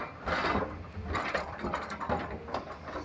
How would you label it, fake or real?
real